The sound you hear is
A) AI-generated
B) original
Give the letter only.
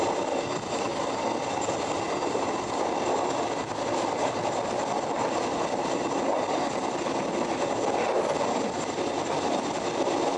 A